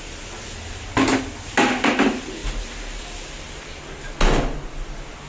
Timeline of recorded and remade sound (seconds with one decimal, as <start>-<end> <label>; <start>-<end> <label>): 0.0-5.3 recorded